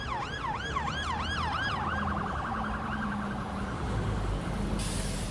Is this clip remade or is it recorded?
recorded